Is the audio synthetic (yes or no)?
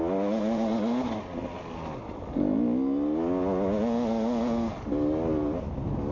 no